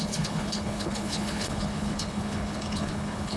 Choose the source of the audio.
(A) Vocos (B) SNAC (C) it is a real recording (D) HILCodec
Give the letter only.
D